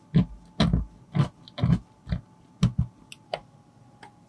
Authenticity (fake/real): real